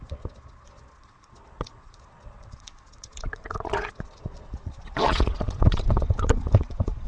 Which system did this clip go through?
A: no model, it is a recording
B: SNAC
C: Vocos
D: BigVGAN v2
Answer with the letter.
C